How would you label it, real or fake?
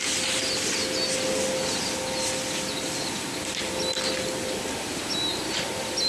real